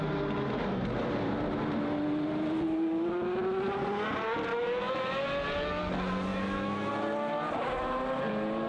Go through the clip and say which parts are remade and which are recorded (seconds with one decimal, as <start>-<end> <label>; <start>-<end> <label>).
0.0-4.5 recorded; 4.5-5.2 remade; 5.2-6.3 recorded; 6.3-6.9 remade; 6.9-8.7 recorded